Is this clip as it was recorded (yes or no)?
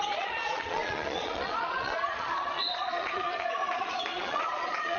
no